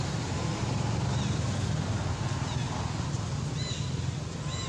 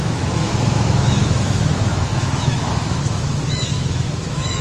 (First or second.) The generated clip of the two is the second